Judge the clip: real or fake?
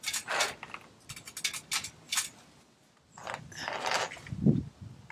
real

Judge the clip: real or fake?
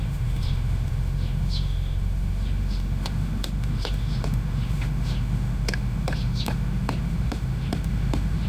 fake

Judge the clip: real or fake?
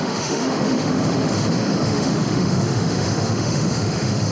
fake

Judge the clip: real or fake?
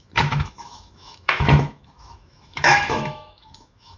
fake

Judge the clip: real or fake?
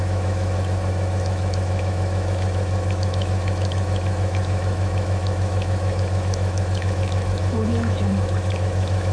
fake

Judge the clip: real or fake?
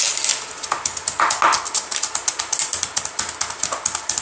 real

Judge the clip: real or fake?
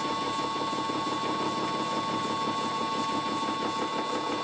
real